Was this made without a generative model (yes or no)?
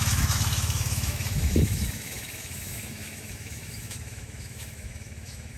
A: no